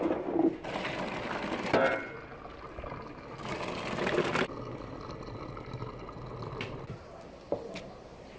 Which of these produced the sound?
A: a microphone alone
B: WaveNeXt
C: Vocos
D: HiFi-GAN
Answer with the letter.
A